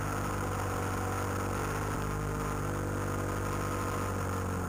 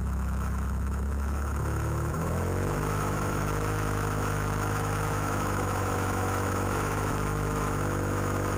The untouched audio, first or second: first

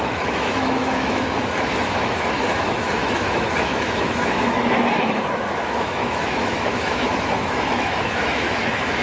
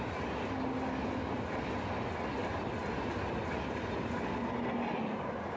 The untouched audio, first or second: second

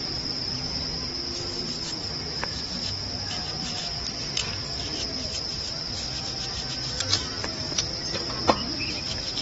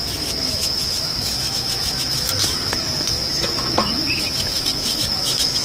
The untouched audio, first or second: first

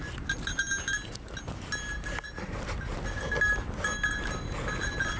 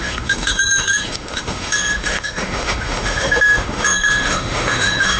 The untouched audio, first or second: first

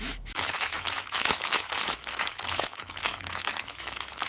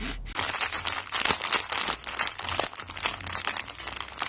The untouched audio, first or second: second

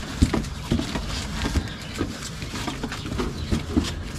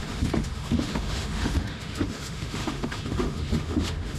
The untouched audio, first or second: first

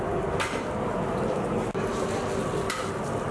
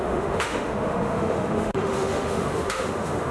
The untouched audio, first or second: first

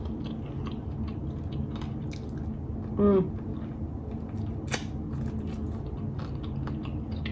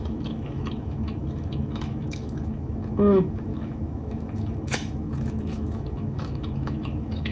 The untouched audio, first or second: first